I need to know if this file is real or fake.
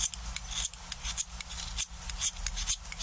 real